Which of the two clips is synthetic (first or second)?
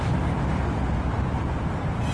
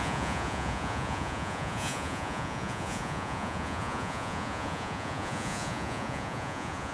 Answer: second